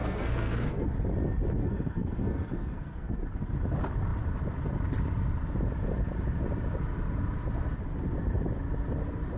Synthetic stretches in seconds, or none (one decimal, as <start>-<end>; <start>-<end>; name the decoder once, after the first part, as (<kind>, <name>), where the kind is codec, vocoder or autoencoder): 0.0-0.9 (codec, SNAC); 1.6-3.2